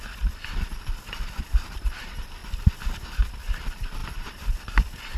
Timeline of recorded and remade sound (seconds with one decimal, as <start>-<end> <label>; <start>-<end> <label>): 0.0-5.2 recorded